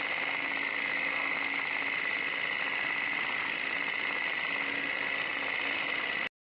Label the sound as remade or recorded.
recorded